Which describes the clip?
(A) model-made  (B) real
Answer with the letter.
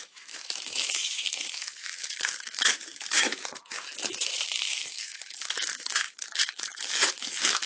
A